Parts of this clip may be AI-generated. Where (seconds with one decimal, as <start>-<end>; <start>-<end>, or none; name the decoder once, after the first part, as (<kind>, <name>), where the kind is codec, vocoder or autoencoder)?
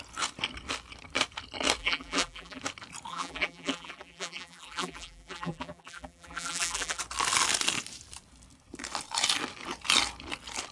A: 1.8-2.6 (vocoder, BigVGAN v2); 3.1-7.0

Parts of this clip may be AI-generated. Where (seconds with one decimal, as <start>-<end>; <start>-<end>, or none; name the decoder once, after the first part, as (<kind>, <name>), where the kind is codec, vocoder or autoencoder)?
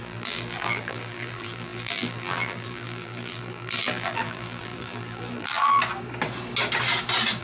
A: 0.0-5.8 (vocoder, BigVGAN v2)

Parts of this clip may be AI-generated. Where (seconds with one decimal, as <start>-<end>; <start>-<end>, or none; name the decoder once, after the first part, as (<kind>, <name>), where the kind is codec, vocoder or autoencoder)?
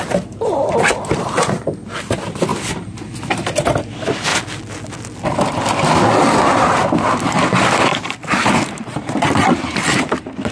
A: 0.0-2.5 (vocoder, BigVGAN v2); 3.3-4.3; 6.3-10.5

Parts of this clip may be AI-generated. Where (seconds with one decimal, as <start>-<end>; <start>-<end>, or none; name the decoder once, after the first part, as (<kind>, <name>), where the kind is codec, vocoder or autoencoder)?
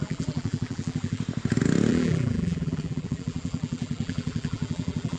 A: 0.0-1.2 (vocoder, BigVGAN v2); 1.9-5.2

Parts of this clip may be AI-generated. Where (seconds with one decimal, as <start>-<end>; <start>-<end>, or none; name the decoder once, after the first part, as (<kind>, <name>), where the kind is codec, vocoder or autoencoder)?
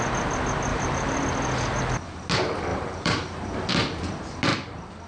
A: 0.7-1.2 (vocoder, BigVGAN v2); 2.7-3.7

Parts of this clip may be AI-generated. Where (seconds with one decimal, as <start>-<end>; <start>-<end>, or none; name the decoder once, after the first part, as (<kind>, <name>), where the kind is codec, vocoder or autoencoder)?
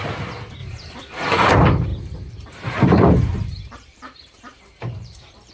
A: 0.6-1.5 (vocoder, BigVGAN v2); 1.9-5.5